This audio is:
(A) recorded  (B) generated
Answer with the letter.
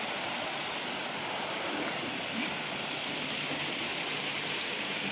A